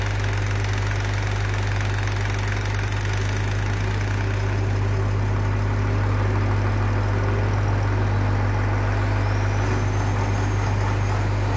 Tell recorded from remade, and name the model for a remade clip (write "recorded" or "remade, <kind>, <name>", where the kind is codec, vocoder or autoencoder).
recorded